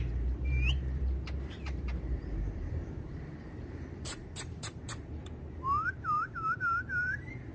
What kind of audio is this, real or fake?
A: fake